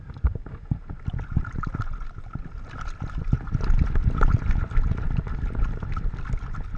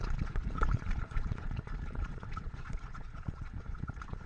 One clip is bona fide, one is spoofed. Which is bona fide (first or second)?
first